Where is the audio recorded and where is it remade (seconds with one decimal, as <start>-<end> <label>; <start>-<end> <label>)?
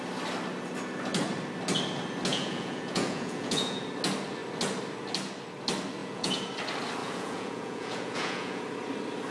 0.0-2.3 recorded; 2.3-3.8 remade; 3.8-6.0 recorded; 6.0-6.5 remade; 6.5-7.0 recorded; 7.0-8.6 remade; 8.6-9.3 recorded